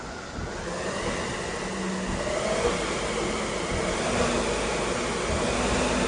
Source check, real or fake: real